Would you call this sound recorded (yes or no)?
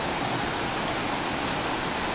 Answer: yes